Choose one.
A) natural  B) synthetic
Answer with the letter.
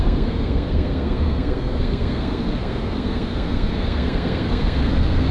B